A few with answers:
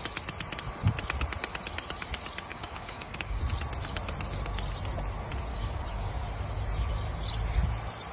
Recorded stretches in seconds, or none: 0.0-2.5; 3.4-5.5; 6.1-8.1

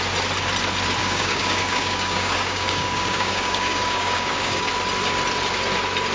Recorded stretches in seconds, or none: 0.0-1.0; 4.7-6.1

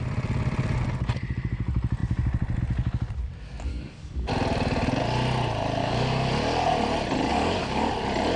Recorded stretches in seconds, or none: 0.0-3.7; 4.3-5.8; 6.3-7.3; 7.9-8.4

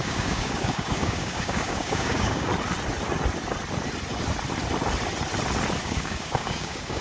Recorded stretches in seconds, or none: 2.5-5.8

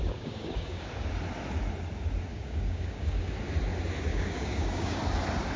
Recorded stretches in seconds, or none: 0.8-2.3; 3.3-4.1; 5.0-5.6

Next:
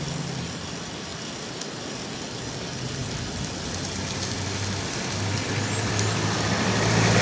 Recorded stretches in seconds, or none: 0.0-7.2

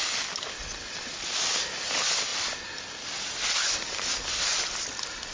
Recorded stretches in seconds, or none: 0.0-5.3

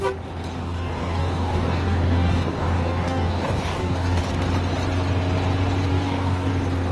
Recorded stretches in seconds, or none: 0.0-0.6; 4.2-5.9; 6.5-6.9